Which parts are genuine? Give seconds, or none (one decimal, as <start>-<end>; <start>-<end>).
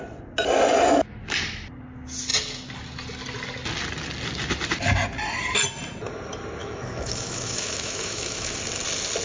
0.0-6.6; 8.6-9.2